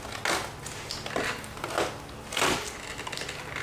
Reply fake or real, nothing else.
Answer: real